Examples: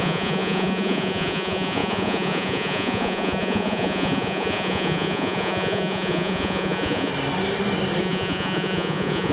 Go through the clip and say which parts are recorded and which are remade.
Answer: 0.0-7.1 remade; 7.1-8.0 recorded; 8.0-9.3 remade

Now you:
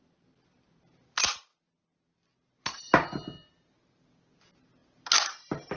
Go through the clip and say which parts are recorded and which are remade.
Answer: 0.0-5.8 recorded

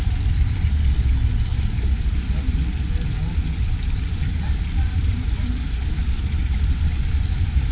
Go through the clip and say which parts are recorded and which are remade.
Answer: 0.0-1.5 recorded; 1.5-2.6 remade; 2.6-5.0 recorded; 5.0-5.8 remade; 5.8-6.4 recorded; 6.4-7.7 remade

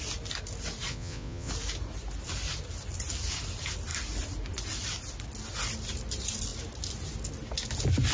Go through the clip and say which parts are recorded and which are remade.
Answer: 0.0-0.9 recorded; 0.9-1.5 remade; 1.5-8.1 recorded

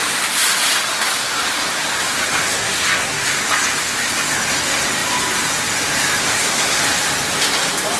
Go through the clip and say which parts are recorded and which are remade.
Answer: 0.0-2.5 recorded; 2.5-3.3 remade; 3.3-6.2 recorded; 6.2-6.8 remade; 6.8-8.0 recorded

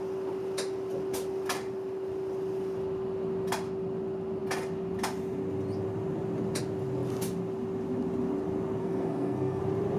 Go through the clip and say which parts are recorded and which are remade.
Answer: 0.0-8.8 recorded; 8.8-9.6 remade; 9.6-10.0 recorded